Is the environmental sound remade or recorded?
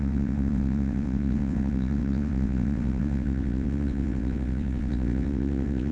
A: remade